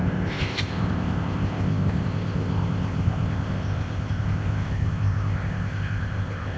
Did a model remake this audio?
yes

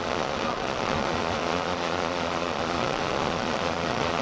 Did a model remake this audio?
yes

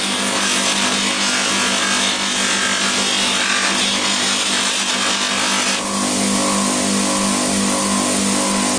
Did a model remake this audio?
no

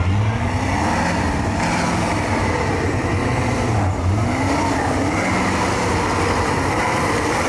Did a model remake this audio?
no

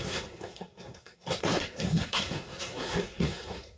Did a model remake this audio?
yes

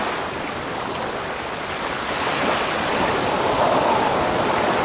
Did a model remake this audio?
no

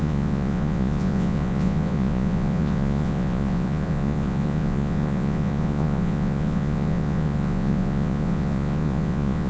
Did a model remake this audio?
yes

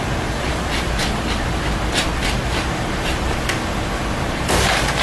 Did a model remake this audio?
yes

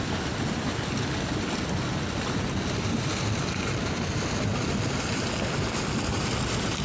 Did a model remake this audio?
no